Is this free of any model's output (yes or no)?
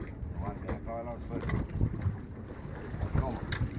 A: yes